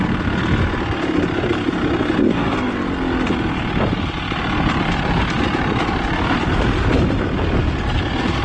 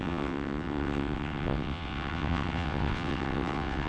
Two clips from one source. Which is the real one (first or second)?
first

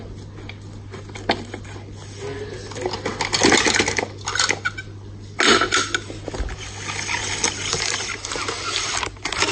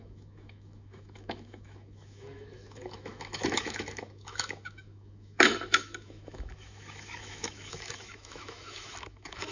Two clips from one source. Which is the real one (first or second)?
first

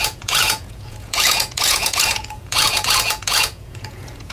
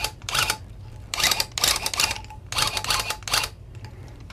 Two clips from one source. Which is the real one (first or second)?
second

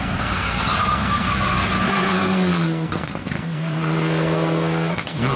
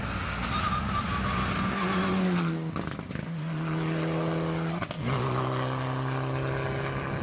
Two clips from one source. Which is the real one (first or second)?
second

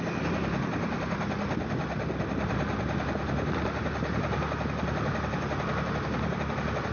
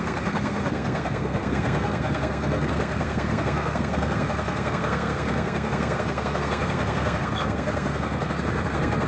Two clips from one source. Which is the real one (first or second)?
first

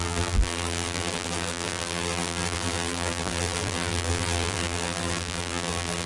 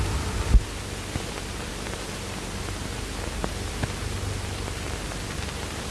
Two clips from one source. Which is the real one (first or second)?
second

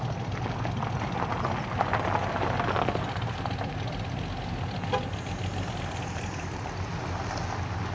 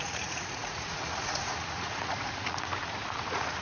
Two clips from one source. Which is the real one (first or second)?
first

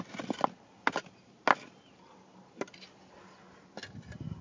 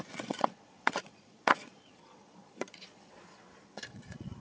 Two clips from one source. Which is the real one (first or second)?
first